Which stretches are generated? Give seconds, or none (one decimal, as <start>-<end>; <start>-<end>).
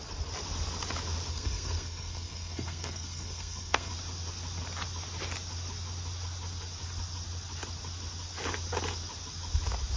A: 1.3-3.9